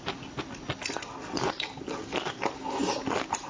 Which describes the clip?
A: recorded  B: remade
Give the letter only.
A